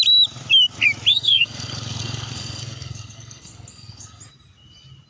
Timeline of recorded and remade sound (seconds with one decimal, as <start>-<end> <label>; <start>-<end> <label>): 0.0-1.1 recorded; 1.1-4.2 remade; 4.2-5.1 recorded